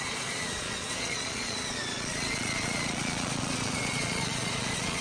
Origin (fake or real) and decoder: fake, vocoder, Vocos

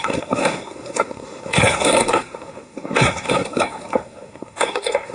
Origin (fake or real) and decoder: fake, codec, SNAC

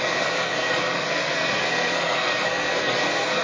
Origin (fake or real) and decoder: fake, codec, SNAC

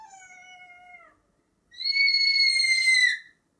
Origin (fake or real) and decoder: real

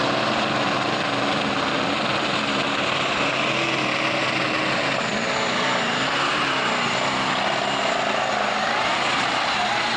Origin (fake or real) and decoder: real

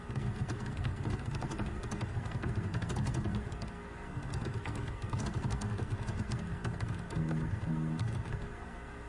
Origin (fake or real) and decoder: fake, codec, SNAC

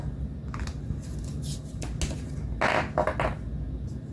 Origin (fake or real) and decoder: real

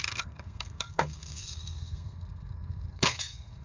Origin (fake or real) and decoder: fake, codec, SNAC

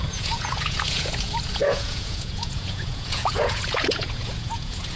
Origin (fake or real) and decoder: fake, vocoder, Vocos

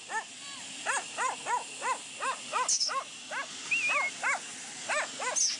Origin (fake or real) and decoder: real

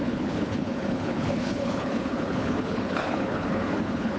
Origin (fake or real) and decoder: fake, codec, HILCodec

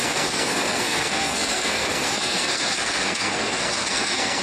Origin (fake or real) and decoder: fake, codec, SNAC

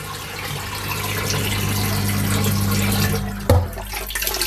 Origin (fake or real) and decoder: real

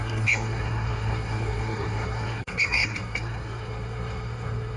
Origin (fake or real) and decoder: fake, codec, SNAC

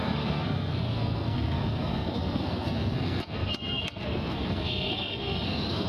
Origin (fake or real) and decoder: fake, codec, SNAC